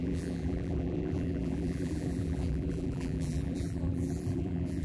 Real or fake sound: fake